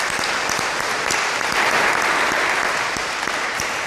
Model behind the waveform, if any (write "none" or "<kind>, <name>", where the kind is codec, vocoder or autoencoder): none